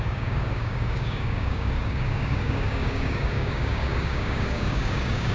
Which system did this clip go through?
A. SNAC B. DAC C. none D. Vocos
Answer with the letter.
B